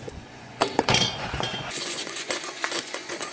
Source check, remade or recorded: remade